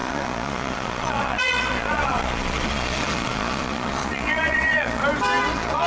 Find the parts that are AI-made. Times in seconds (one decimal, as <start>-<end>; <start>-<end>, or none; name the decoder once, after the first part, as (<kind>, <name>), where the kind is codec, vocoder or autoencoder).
0.0-5.0 (vocoder, Vocos); 5.5-5.9